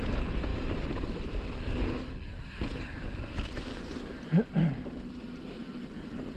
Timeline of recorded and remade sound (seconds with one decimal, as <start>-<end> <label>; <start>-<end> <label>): 0.0-6.4 recorded